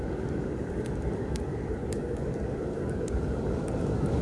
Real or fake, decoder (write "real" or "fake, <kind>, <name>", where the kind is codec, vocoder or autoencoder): fake, codec, DAC